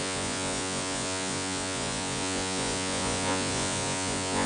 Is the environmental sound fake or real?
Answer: fake